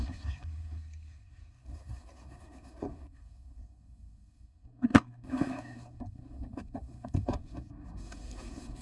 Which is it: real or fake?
fake